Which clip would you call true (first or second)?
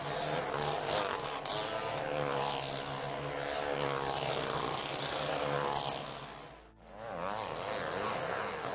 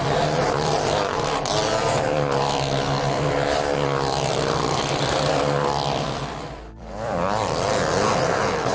first